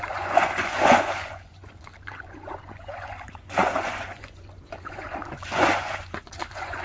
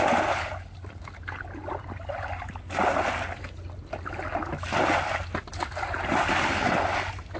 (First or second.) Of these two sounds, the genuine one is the second